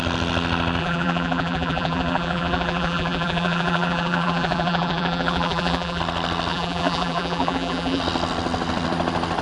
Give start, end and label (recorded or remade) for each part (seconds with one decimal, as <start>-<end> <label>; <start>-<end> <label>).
0.0-0.8 recorded; 0.8-6.0 remade; 6.0-6.5 recorded; 6.5-8.0 remade; 8.0-9.4 recorded